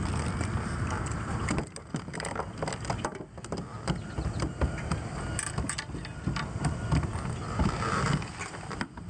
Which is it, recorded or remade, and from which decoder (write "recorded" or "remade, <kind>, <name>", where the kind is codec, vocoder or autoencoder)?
recorded